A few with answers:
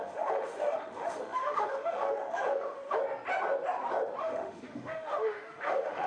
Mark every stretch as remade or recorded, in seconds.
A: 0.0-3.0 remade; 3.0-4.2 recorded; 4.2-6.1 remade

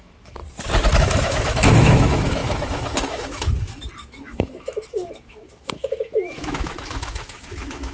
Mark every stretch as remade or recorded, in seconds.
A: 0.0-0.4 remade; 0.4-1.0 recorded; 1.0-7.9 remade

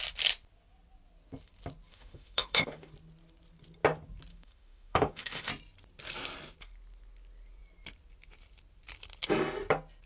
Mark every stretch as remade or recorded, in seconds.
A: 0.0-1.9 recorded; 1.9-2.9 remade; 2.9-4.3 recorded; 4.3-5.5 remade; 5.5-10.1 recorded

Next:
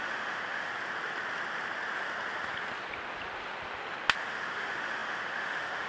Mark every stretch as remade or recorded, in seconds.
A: 0.0-0.7 remade; 0.7-4.2 recorded; 4.2-5.9 remade